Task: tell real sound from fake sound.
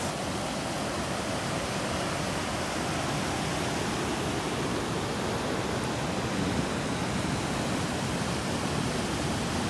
real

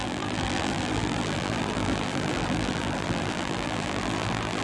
fake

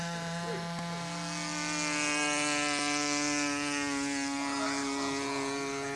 real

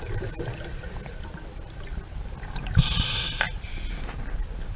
real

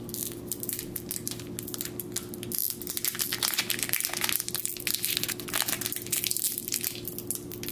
real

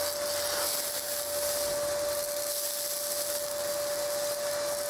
real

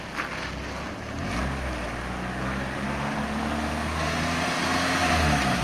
real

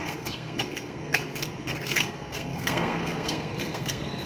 fake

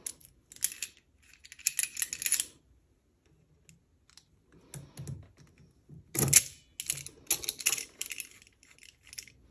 real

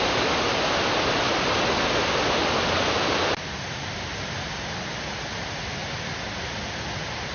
real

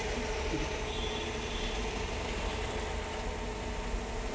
real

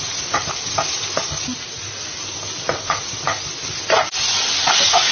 real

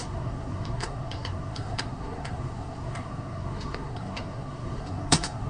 fake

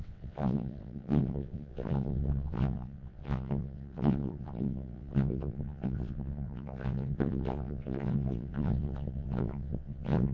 fake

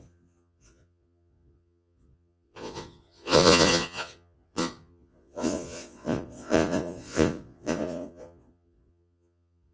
fake